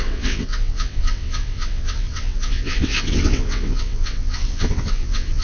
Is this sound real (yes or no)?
no